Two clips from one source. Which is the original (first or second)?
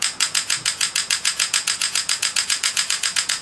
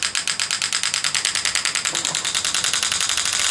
second